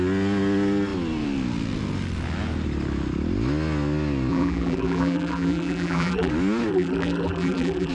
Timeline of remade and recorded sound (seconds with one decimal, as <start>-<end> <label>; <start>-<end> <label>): 0.0-4.3 recorded; 4.3-6.3 remade; 6.3-6.7 recorded; 6.7-7.9 remade